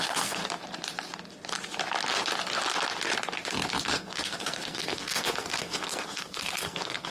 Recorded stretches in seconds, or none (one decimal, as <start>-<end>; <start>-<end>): 0.4-3.9